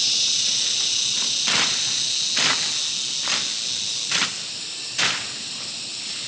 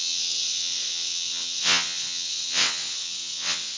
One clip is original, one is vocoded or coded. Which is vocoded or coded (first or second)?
second